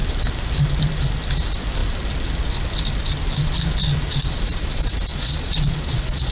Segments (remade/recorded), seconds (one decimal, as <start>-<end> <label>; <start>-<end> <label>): 0.0-5.1 recorded; 5.1-6.3 remade